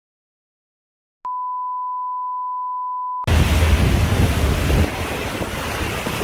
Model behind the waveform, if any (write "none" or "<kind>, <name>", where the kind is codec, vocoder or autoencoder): none